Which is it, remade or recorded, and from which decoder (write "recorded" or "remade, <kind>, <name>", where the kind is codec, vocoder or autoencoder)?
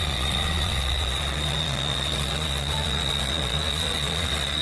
remade, vocoder, Vocos